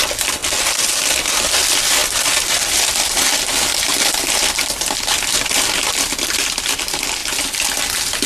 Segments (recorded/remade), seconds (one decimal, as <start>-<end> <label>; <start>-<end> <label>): 0.0-0.4 remade; 0.4-1.5 recorded; 1.5-2.0 remade; 2.0-3.8 recorded; 3.8-7.2 remade; 7.2-8.3 recorded